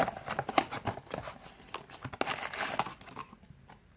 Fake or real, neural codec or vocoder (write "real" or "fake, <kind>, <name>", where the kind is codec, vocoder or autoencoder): real